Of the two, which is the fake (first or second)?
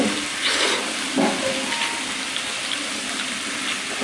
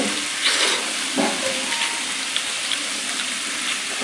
second